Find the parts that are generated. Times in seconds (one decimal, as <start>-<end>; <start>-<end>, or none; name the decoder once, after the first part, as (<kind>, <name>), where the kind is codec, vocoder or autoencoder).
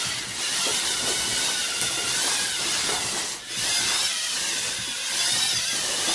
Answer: none